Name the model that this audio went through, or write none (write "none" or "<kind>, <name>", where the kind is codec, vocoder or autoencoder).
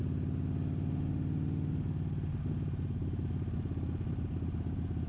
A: none